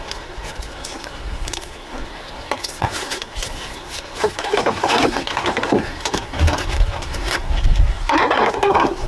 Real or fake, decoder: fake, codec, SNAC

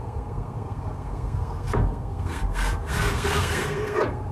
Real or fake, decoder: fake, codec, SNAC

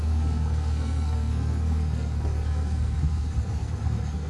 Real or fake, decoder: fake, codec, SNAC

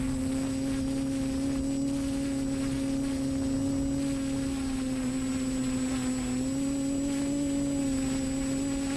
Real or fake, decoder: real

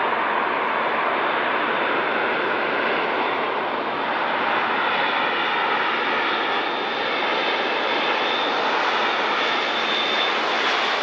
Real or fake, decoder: real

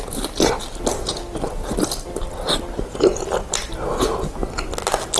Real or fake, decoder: real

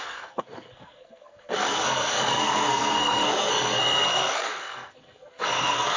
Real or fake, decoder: fake, codec, SNAC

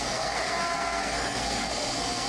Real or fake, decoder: fake, codec, SNAC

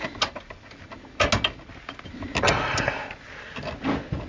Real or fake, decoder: real